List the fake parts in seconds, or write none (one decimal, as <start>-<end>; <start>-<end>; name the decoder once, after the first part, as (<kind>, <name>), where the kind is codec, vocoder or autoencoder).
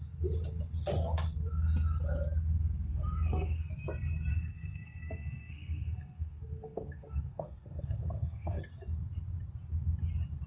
2.9-3.7 (codec, SNAC); 4.3-8.6